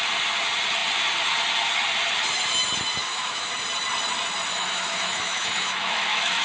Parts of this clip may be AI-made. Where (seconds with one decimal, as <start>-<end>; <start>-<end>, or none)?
3.0-3.5; 4.5-6.4